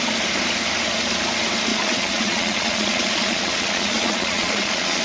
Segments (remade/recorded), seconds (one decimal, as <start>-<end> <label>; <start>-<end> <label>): 0.0-1.7 recorded; 1.7-5.0 remade